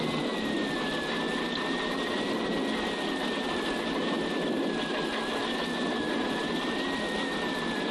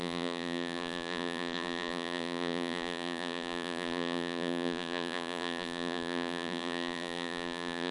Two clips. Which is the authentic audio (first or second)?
first